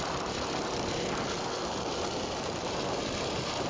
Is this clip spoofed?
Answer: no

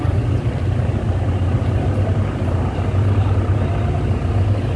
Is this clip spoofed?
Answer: no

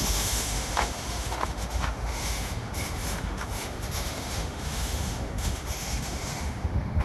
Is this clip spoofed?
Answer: yes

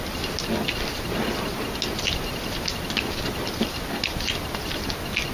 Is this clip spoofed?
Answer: no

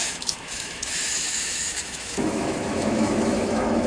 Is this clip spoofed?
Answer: yes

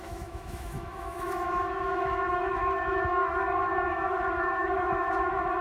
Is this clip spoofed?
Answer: yes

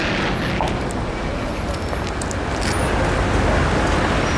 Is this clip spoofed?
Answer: no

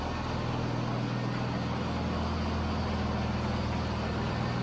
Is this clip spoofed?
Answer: no